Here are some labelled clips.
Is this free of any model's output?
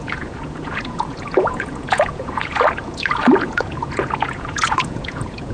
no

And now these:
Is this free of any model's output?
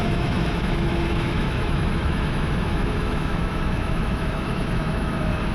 no